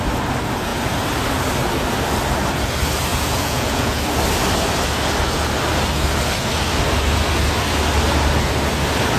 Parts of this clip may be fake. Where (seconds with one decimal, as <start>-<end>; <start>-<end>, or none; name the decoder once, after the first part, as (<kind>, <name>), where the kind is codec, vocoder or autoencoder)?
3.1-4.0 (vocoder, Vocos)